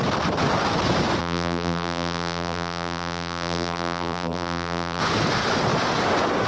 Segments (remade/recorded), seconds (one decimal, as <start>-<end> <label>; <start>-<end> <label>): 0.0-1.2 recorded; 1.2-5.0 remade; 5.0-6.5 recorded